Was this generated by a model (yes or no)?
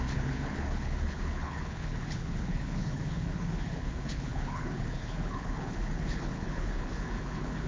yes